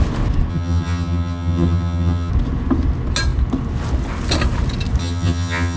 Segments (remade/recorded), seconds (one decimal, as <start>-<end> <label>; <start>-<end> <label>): 0.0-0.5 recorded; 0.5-2.3 remade; 2.3-5.0 recorded; 5.0-5.8 remade